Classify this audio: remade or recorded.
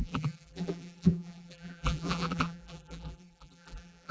remade